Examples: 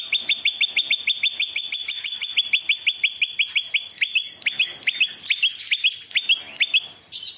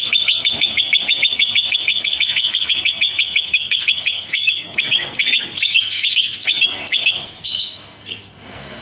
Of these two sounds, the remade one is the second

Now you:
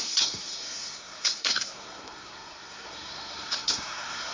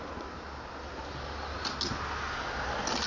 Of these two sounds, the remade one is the first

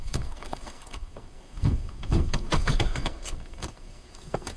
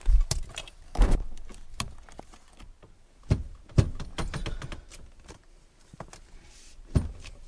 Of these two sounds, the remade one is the first